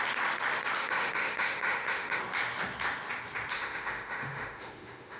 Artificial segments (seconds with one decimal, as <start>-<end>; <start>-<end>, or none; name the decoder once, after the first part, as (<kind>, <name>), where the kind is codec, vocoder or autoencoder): 0.8-2.2 (autoencoder, DAC-VAE); 3.5-5.2